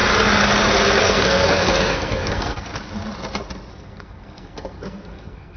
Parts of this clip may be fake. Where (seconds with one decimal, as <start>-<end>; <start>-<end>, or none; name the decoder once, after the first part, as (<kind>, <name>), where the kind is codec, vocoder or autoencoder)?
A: 1.0-2.7 (codec, SNAC); 3.7-5.6

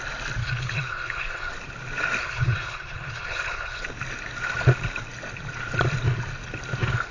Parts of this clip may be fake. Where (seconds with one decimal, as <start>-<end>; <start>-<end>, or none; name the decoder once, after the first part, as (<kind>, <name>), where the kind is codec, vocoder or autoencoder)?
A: 0.4-1.5 (codec, HILCodec); 2.2-3.8

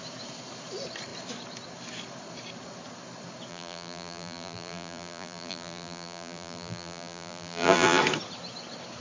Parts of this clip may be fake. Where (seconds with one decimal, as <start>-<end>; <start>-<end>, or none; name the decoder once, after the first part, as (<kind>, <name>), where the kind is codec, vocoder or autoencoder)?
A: 3.5-8.0 (vocoder, BigVGAN v2)

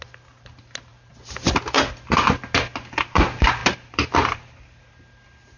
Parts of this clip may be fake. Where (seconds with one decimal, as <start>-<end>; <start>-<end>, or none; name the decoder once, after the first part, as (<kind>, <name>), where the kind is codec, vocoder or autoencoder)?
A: 3.6-4.9 (vocoder, BigVGAN v2)

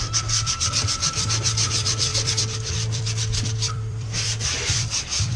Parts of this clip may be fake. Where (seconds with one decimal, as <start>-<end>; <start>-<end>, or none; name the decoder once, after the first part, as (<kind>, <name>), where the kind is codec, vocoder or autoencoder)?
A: 0.0-5.4 (vocoder, BigVGAN v2)